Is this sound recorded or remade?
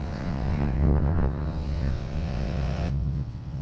remade